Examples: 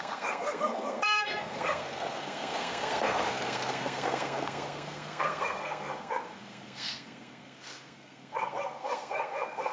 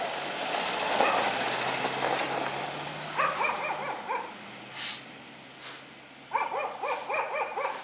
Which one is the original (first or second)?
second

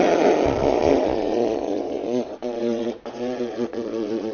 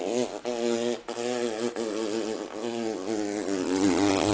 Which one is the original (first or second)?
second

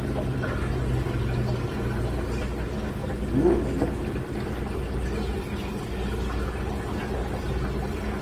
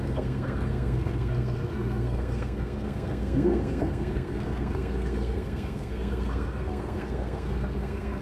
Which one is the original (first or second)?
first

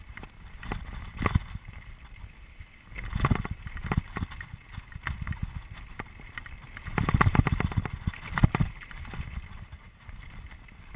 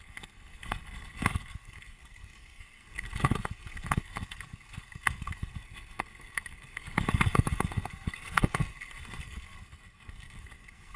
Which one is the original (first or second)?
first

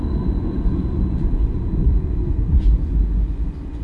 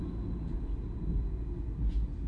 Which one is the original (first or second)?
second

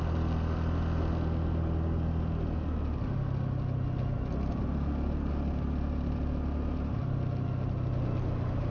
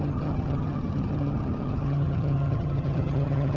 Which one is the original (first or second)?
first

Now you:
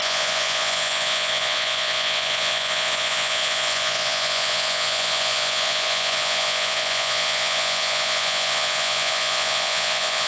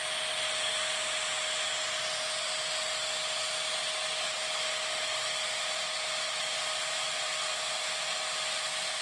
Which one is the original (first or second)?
second